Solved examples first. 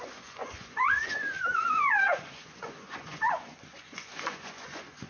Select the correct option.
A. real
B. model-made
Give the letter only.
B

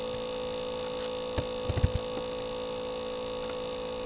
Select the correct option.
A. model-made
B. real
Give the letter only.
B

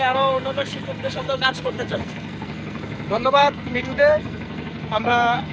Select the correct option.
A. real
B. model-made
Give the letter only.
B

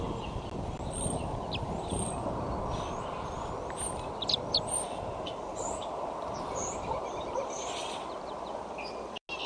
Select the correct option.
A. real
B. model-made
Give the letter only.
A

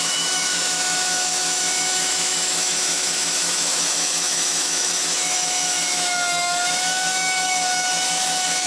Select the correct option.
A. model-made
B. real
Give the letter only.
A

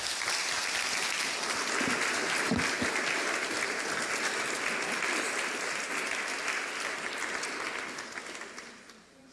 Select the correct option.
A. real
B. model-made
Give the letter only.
A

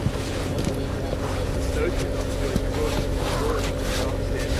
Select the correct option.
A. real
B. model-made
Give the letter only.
A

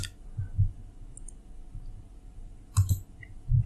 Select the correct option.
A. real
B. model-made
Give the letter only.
A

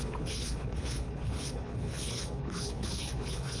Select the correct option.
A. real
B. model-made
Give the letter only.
B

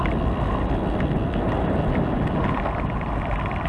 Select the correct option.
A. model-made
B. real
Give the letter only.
B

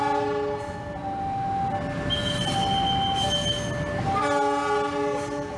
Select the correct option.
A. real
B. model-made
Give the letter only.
A